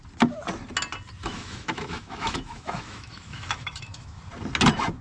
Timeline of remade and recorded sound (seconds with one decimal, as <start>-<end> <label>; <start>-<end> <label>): 0.0-1.2 recorded; 1.2-4.2 remade; 4.2-5.0 recorded